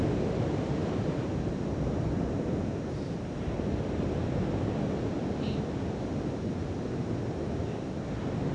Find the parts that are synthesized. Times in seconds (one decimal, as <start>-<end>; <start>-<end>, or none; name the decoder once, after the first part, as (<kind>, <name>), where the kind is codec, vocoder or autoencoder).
none